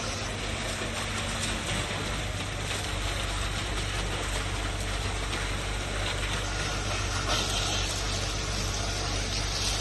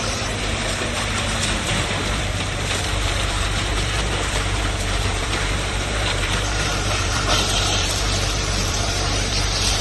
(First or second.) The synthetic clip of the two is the second